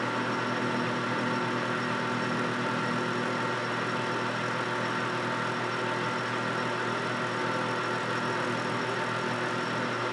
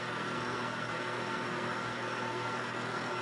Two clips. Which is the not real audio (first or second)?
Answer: second